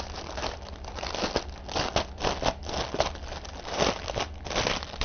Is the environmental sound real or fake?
real